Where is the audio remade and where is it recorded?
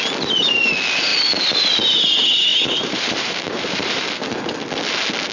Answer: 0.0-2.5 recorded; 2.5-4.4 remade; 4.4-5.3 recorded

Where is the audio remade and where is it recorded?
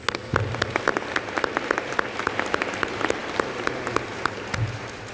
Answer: 0.0-5.1 recorded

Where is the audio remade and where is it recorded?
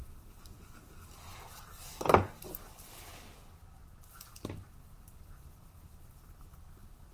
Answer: 0.0-7.1 recorded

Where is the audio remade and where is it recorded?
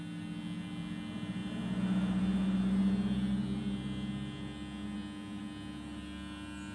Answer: 0.0-6.7 recorded